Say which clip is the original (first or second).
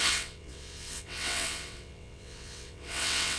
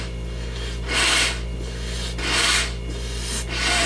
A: second